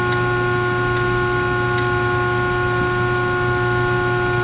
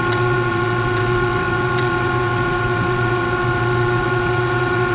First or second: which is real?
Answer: first